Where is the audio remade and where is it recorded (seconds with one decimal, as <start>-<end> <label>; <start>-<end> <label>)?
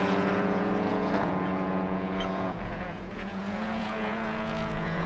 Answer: 0.0-5.1 remade